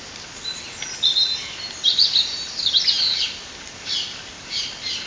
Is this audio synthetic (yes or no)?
no